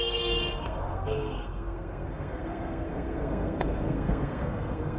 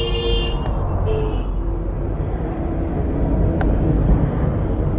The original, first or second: second